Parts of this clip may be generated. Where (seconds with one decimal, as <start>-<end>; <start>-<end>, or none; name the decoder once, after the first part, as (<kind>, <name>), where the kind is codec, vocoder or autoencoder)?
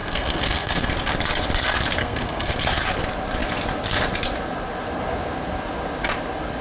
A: 0.0-0.9 (codec, SNAC); 2.0-2.5